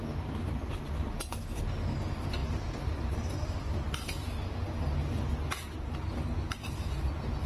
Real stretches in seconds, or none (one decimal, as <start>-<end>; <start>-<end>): 0.0-2.4; 3.6-7.5